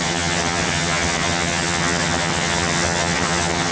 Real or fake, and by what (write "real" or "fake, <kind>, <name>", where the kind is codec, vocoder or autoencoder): fake, vocoder, HiFi-GAN